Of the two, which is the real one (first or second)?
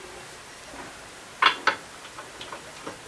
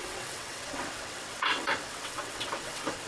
first